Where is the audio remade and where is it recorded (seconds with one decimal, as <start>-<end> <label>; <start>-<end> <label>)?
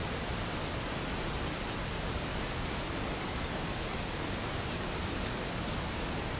0.0-2.3 recorded; 2.3-6.4 remade